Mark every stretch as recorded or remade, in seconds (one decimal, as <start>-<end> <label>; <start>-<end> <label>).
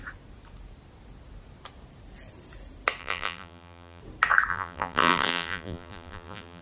0.0-3.0 recorded; 3.0-4.0 remade; 4.0-4.5 recorded; 4.5-6.6 remade